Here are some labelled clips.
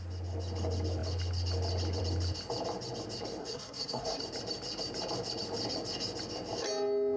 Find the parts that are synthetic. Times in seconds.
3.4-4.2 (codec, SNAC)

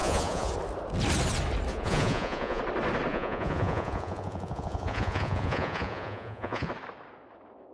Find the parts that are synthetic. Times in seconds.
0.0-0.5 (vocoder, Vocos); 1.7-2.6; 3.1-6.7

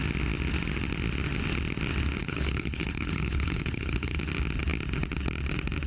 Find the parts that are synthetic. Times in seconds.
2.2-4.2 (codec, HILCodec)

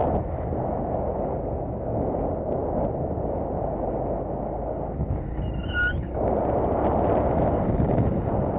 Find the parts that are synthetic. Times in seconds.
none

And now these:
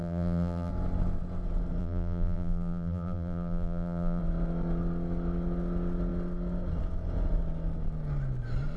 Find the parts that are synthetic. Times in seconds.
0.0-0.7 (vocoder, BigVGAN v2); 1.8-4.2